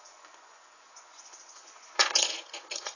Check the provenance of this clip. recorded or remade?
remade